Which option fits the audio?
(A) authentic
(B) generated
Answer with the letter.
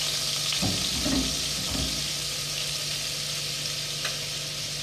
A